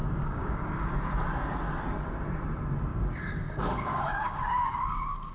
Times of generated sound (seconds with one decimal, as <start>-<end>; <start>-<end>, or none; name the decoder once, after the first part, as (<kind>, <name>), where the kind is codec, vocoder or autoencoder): 0.0-0.8 (codec, DAC); 2.9-5.3